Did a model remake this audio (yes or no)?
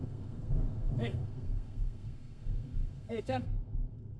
yes